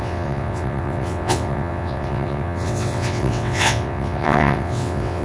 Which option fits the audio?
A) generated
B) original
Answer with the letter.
A